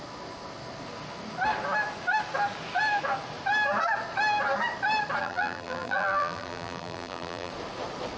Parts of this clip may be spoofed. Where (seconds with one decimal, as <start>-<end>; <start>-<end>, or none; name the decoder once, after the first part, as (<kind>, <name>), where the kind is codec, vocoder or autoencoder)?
5.2-7.5 (vocoder, BigVGAN v2)